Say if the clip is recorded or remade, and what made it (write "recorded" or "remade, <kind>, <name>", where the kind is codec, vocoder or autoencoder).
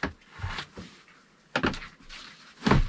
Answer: recorded